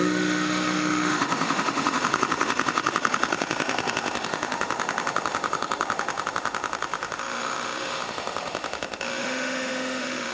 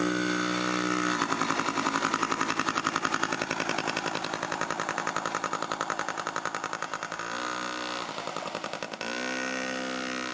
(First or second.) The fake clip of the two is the first